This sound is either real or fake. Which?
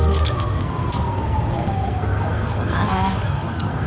fake